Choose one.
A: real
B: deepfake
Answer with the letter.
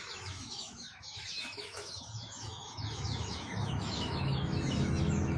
B